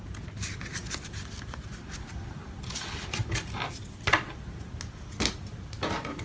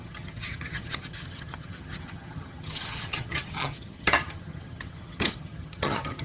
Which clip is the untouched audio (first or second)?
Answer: first